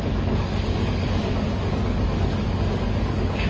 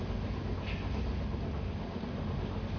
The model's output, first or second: first